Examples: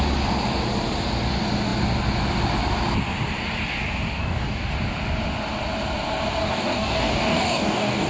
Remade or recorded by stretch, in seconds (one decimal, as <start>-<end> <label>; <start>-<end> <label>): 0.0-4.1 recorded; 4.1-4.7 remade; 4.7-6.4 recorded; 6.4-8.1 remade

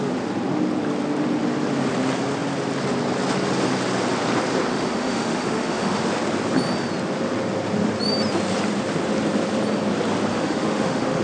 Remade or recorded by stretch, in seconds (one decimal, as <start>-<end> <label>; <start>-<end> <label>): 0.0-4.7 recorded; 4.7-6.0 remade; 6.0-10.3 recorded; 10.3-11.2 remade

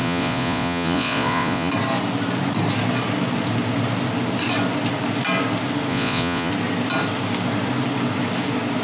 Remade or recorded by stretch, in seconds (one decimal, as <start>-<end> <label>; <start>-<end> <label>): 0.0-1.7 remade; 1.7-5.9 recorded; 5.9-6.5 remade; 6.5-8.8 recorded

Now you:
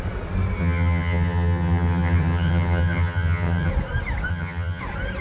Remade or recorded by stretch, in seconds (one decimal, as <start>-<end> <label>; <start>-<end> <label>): 0.0-0.6 recorded; 0.6-3.7 remade; 3.7-4.3 recorded; 4.3-4.8 remade; 4.8-5.2 recorded

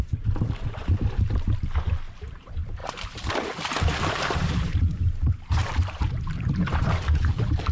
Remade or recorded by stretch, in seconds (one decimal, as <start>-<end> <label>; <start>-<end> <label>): 0.0-0.8 remade; 0.8-2.2 recorded; 2.2-7.7 remade

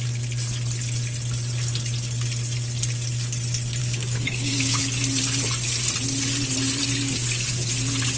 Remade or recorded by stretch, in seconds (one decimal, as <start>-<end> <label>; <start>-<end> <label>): 0.0-3.8 recorded; 3.8-4.8 remade; 4.8-8.2 recorded

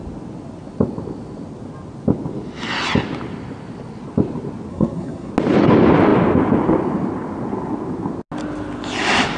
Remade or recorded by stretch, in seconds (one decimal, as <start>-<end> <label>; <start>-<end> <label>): 0.0-4.7 recorded; 4.7-5.3 remade; 5.3-9.4 recorded

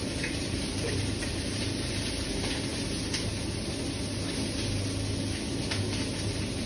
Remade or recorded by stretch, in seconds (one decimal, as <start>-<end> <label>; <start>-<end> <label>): 0.0-2.3 remade; 2.3-6.7 recorded